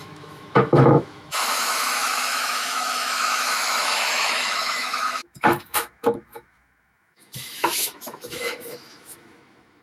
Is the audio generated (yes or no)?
yes